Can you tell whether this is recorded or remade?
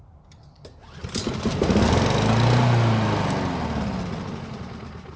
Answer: recorded